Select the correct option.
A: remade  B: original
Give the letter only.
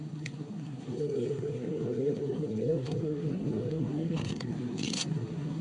A